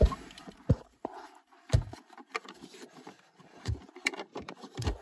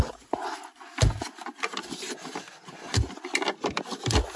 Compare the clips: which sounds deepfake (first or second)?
first